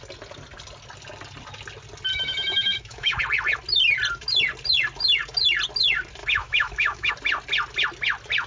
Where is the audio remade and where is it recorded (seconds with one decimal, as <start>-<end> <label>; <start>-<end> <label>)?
0.0-2.1 recorded; 2.1-3.2 remade; 3.2-6.2 recorded; 6.2-7.1 remade; 7.1-8.5 recorded